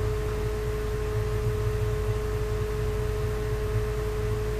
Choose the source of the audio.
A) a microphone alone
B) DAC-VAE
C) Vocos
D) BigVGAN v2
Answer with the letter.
A